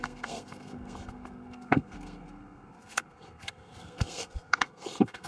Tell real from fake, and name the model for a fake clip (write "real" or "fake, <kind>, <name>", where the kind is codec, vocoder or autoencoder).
fake, codec, SNAC